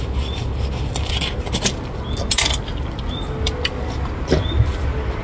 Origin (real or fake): real